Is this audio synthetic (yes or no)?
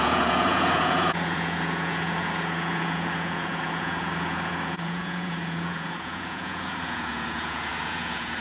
yes